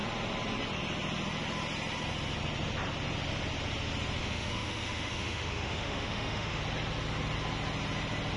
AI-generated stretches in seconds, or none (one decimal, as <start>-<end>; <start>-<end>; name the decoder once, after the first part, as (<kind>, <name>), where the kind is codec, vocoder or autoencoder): 4.2-6.6 (autoencoder, DAC-VAE)